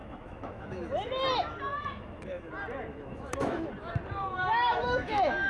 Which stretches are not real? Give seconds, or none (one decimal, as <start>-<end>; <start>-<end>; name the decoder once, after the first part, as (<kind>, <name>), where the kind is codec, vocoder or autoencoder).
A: 0.0-0.9 (autoencoder, DAC-VAE); 1.7-2.5; 2.9-3.7; 4.2-5.5